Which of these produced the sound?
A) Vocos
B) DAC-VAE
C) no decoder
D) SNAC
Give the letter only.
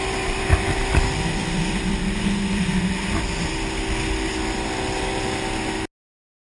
C